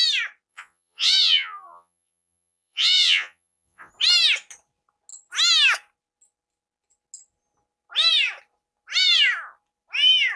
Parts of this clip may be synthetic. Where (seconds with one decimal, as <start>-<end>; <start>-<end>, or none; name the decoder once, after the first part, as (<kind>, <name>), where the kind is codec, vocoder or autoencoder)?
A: 0.5-3.9 (vocoder, Vocos)